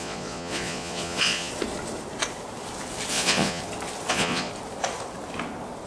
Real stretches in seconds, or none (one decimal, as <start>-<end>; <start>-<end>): 1.5-3.1; 3.6-4.1; 4.5-5.9